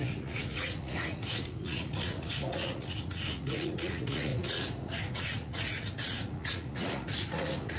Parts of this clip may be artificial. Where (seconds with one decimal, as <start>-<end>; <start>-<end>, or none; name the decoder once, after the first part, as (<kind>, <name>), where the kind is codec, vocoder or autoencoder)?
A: 0.0-7.8 (vocoder, Vocos)